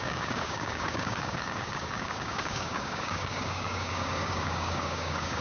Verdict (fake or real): fake